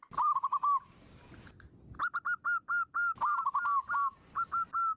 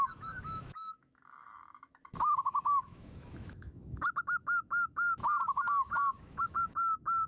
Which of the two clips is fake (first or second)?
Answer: second